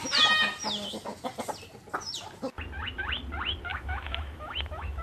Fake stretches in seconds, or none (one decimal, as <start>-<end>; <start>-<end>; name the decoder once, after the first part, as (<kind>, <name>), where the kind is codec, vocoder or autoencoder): 3.7-5.0 (autoencoder, DAC-VAE)